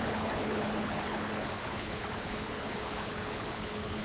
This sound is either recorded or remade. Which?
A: remade